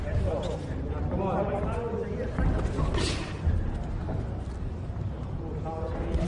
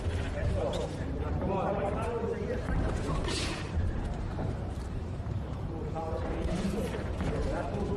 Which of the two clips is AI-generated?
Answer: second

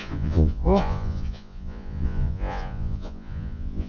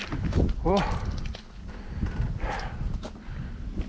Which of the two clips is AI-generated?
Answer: first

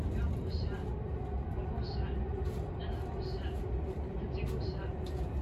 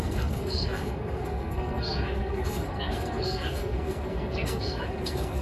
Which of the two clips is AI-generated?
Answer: second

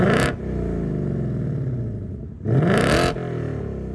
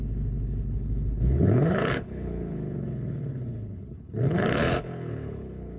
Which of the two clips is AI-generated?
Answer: second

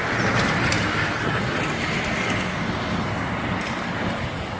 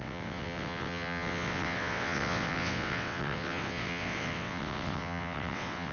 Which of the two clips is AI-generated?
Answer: second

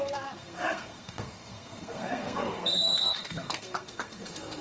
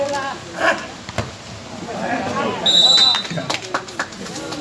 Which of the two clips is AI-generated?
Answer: first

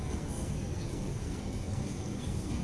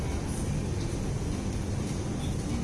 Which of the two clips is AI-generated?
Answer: first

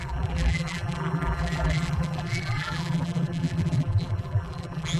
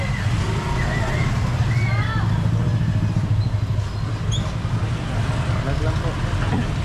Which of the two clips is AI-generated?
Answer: first